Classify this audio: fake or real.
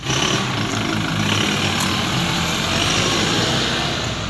real